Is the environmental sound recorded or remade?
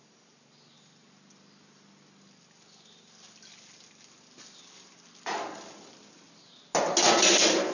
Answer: recorded